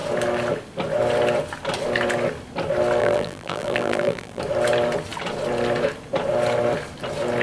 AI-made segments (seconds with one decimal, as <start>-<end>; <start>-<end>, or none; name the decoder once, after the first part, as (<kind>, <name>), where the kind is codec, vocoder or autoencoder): 3.0-4.4 (vocoder, BigVGAN v2)